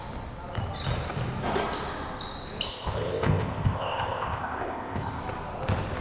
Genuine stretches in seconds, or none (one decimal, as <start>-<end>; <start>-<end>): 0.0-2.7; 5.2-6.0

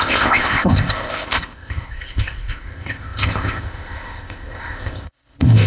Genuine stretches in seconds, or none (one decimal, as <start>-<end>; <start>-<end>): none

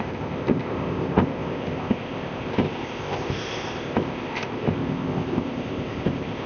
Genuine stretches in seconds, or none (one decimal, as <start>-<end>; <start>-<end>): none

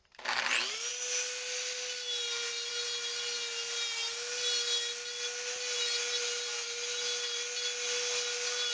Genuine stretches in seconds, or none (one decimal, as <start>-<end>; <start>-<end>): 0.0-8.7

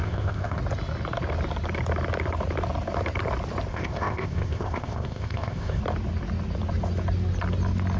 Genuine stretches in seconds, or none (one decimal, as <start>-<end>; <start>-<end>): 0.6-3.7; 5.8-8.0

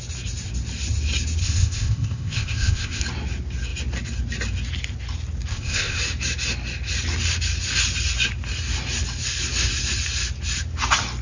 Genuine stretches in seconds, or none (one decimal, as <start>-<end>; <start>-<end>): 0.0-1.4; 3.0-5.5; 6.0-11.2

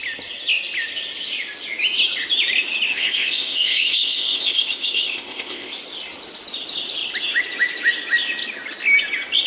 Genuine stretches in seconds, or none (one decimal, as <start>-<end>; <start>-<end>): 0.0-2.9; 5.7-9.5

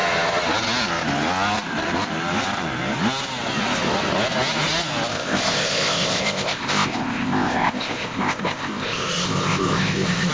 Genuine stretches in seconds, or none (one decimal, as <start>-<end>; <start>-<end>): 0.0-5.1